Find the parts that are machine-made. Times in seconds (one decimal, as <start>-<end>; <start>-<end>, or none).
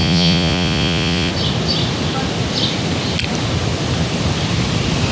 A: 0.0-1.3